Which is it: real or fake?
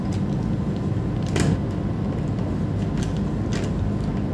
real